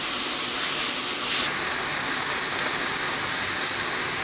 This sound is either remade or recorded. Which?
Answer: recorded